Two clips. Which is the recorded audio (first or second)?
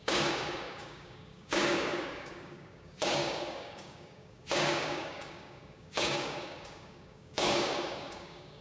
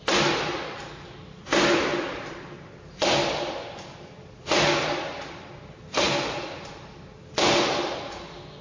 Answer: second